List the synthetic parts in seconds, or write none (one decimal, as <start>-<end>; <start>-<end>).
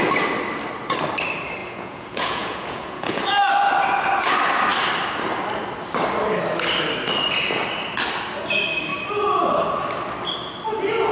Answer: 1.6-3.2